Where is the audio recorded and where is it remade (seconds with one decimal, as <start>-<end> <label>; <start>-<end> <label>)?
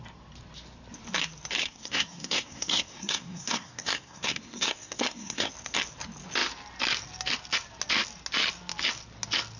0.0-1.6 recorded; 1.6-5.5 remade; 5.5-9.6 recorded